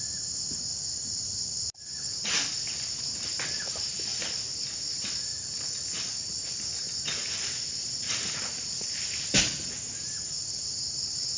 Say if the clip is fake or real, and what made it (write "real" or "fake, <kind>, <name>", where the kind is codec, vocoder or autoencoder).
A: real